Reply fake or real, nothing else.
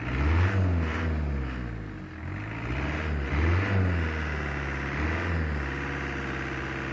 real